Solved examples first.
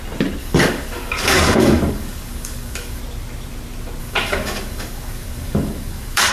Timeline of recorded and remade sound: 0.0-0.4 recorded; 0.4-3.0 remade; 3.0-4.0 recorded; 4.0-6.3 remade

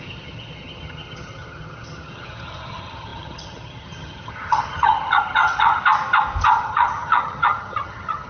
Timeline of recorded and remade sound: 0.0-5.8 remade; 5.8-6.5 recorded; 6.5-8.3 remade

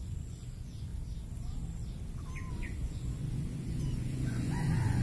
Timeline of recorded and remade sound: 0.0-0.9 remade; 0.9-2.5 recorded; 2.5-5.0 remade

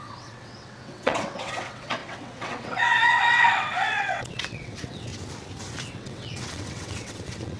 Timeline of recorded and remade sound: 0.0-5.1 remade; 5.1-5.9 recorded; 5.9-7.6 remade

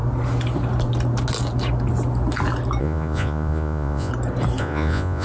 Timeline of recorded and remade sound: 0.0-2.8 recorded; 2.8-4.1 remade; 4.1-4.6 recorded; 4.6-5.2 remade